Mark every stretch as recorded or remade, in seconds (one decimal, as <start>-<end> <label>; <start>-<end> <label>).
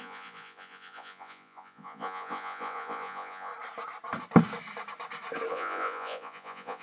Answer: 0.0-3.5 remade; 3.5-5.5 recorded; 5.5-6.8 remade